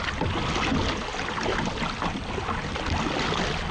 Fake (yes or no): no